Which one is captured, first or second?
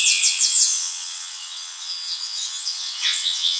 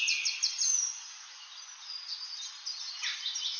second